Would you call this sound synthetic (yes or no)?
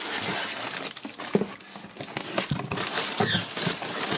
no